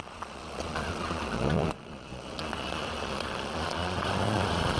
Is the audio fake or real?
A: fake